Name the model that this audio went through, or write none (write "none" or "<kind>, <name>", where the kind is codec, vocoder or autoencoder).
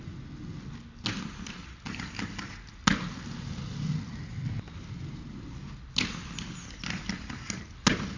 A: none